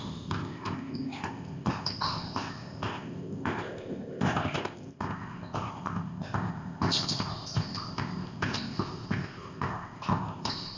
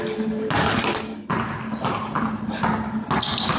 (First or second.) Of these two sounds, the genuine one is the second